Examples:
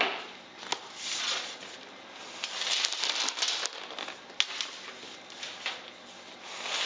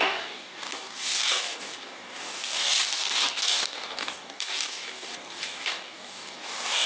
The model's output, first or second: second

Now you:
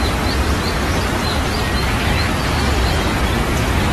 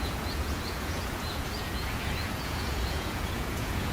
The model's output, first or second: second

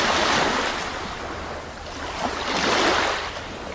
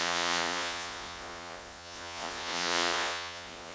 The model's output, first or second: second